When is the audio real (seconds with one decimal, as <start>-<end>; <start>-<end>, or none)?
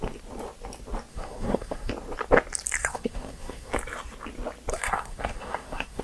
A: 0.0-1.1; 1.9-2.8; 3.7-4.7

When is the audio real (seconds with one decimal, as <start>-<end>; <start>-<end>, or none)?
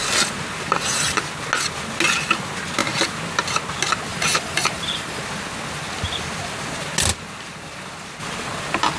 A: 0.0-4.1; 5.2-9.0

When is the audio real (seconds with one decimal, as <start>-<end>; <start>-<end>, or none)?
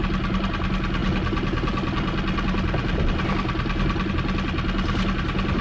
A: 0.0-5.6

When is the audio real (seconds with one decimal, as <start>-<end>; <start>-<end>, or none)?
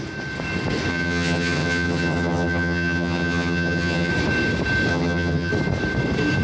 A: 0.0-0.9; 4.1-4.9; 5.5-6.4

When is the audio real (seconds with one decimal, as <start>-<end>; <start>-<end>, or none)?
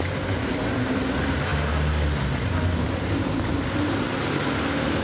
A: 1.5-3.1